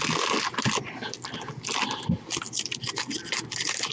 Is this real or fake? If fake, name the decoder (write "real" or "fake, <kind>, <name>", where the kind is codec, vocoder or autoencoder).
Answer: real